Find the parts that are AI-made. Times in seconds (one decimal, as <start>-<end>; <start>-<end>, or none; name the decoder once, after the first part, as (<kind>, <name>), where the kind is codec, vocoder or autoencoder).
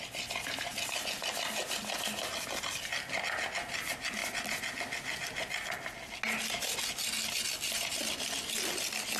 none